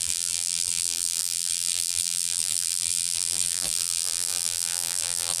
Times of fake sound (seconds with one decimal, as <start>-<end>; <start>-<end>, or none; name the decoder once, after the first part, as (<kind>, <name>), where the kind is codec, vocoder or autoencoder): 0.0-5.4 (vocoder, BigVGAN v2)